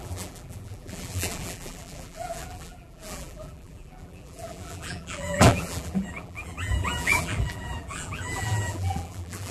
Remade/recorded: remade